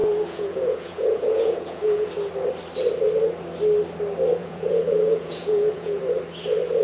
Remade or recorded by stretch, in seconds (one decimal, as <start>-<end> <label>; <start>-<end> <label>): 0.0-2.1 remade; 2.1-4.4 recorded; 4.4-6.0 remade; 6.0-6.8 recorded